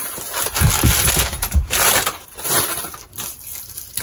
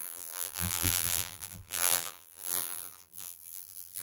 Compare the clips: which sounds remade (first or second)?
second